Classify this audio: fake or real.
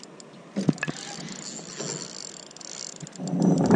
real